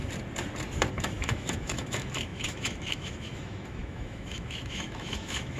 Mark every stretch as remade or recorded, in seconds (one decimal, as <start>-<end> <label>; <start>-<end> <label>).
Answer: 0.0-0.9 recorded; 0.9-5.6 remade